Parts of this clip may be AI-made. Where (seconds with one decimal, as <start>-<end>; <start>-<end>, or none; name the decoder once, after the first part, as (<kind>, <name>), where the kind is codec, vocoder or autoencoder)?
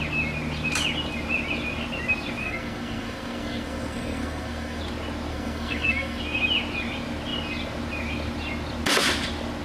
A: 2.4-4.8 (codec, SNAC); 5.3-6.2